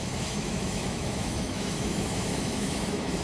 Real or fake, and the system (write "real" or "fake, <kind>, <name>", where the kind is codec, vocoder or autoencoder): fake, autoencoder, DAC-VAE